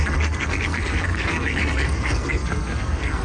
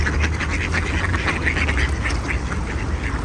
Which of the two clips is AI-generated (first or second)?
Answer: first